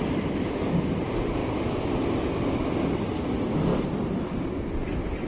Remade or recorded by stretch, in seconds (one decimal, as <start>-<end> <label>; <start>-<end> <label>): 0.0-1.4 remade; 1.4-3.0 recorded; 3.0-5.3 remade